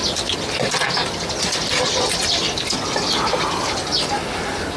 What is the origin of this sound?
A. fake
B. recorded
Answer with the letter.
B